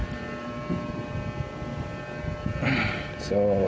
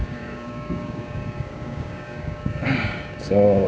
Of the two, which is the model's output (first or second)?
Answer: second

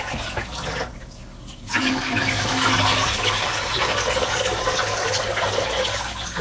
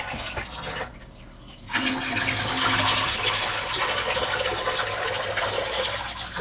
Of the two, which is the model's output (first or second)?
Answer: first